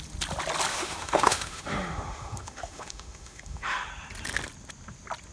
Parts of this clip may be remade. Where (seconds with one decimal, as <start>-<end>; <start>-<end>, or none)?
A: 0.7-3.9